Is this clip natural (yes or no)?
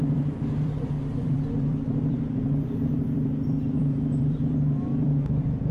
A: no